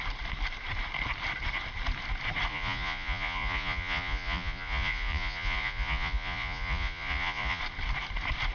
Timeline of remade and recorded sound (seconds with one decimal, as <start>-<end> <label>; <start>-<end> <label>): 0.0-2.5 recorded; 2.5-7.6 remade; 7.6-8.5 recorded